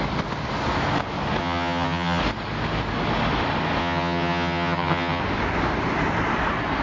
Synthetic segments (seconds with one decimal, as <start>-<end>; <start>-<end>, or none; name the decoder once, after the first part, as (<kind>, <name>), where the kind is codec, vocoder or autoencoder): 1.4-2.2 (vocoder, HiFi-GAN); 3.8-5.2